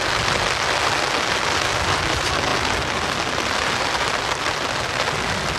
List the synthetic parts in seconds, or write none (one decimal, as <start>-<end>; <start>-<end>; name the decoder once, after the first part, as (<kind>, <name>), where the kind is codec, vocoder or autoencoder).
none